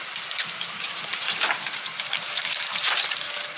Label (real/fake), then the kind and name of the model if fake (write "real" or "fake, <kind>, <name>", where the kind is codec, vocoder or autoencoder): real